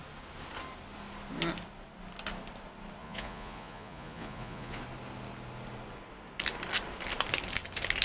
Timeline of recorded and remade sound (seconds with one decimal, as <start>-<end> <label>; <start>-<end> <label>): 0.0-3.0 recorded; 3.0-4.8 remade; 4.8-8.0 recorded